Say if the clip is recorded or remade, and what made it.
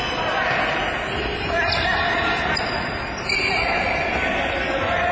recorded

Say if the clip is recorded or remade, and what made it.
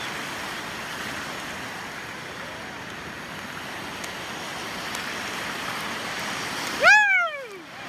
recorded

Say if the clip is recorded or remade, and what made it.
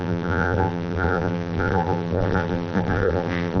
remade, vocoder, BigVGAN v2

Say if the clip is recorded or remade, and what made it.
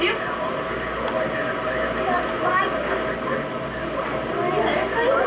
recorded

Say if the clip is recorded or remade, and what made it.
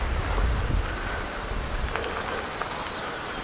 recorded